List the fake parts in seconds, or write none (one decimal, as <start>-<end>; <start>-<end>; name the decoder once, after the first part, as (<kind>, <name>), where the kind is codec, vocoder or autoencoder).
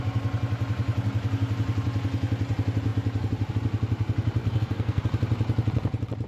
4.4-5.0 (codec, SNAC)